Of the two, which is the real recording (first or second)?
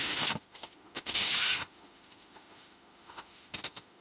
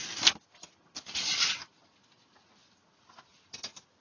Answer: second